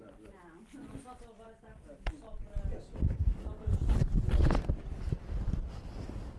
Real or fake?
real